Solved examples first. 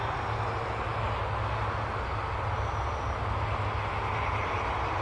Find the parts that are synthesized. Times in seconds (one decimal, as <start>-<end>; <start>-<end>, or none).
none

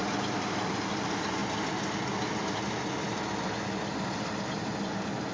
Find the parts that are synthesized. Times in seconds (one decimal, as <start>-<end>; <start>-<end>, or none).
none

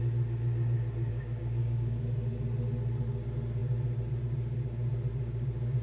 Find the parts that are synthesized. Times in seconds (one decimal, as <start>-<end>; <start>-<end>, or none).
1.1-2.0